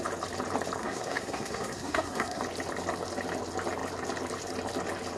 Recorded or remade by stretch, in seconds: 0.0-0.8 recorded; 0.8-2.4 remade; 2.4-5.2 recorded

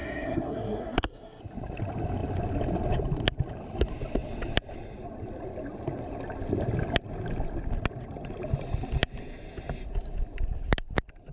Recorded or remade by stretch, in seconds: 0.0-1.4 remade; 1.4-11.3 recorded

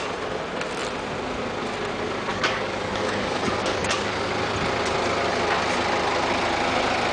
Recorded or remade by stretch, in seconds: 0.0-2.3 recorded; 2.3-4.3 remade; 4.3-7.1 recorded

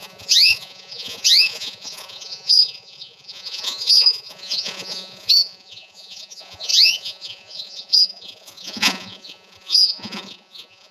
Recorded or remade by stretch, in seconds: 0.0-10.9 remade

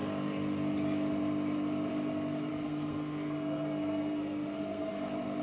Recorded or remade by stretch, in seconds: 0.0-2.5 recorded; 2.5-5.0 remade; 5.0-5.4 recorded

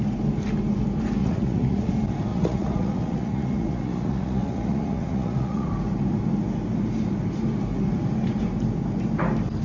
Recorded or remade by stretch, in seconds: 0.0-1.2 recorded; 1.2-1.9 remade; 1.9-2.3 recorded; 2.3-5.7 remade; 5.7-9.6 recorded

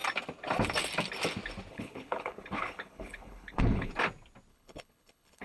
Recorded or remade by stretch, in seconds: 0.0-1.7 recorded; 1.7-3.9 remade; 3.9-4.5 recorded; 4.5-5.4 remade